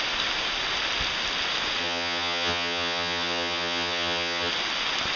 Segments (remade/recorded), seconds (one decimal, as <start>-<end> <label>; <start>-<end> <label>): 0.0-1.8 recorded; 1.8-4.5 remade; 4.5-5.2 recorded